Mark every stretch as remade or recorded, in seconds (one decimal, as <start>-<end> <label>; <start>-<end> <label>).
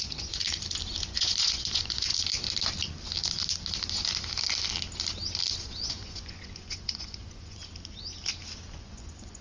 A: 0.0-0.4 remade; 0.4-1.0 recorded; 1.0-2.1 remade; 2.1-5.6 recorded; 5.6-7.6 remade; 7.6-8.7 recorded; 8.7-9.4 remade